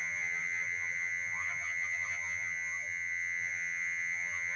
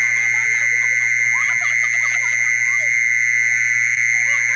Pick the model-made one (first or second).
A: first